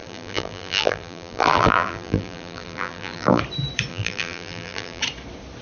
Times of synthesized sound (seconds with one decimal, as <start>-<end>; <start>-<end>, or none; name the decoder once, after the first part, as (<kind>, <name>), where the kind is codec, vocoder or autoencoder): 0.0-3.4 (vocoder, BigVGAN v2); 3.9-5.0